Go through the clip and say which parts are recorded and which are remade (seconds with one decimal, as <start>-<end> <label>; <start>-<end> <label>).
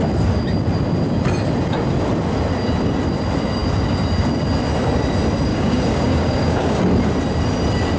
0.0-5.5 recorded; 5.5-6.8 remade; 6.8-8.0 recorded